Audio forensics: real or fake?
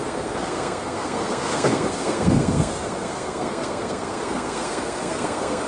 fake